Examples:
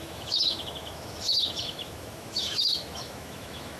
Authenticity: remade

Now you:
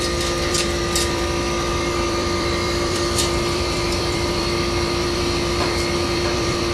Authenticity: remade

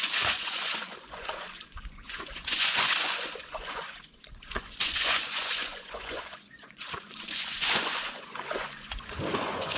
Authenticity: remade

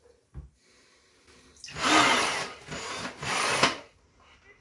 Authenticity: recorded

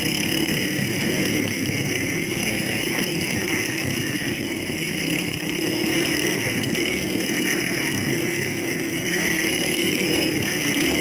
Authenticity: remade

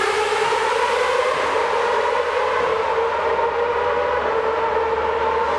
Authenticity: remade